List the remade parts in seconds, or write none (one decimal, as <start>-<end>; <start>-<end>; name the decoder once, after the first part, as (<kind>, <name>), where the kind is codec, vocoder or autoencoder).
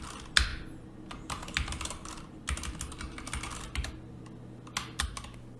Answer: none